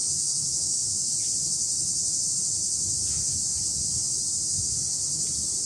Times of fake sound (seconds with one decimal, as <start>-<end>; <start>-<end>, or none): 0.0-1.1